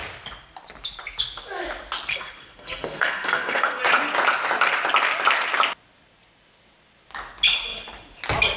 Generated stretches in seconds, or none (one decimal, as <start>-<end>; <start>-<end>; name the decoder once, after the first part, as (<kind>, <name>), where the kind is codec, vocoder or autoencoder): 2.1-3.8 (codec, SNAC)